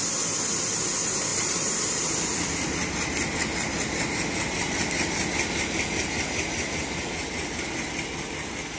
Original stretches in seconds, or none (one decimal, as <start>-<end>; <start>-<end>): 0.0-1.3; 2.0-8.8